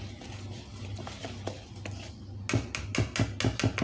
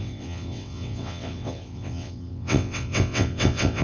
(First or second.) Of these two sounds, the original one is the first